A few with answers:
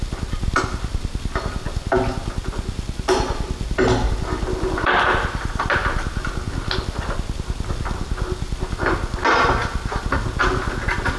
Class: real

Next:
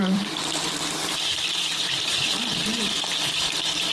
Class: fake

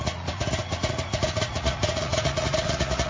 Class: fake